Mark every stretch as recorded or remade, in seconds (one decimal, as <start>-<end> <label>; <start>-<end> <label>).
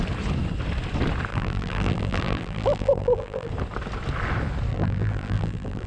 0.0-1.3 recorded; 1.3-3.5 remade; 3.5-4.7 recorded; 4.7-5.9 remade